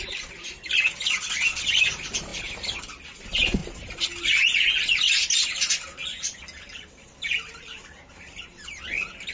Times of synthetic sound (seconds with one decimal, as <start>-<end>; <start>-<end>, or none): none